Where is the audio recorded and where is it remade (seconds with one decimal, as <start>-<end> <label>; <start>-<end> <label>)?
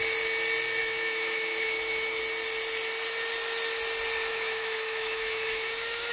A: 0.0-0.8 recorded; 0.8-2.2 remade; 2.2-4.3 recorded; 4.3-6.1 remade